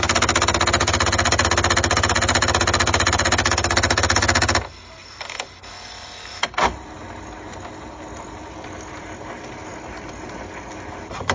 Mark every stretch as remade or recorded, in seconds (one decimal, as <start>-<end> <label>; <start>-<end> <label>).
0.0-11.3 recorded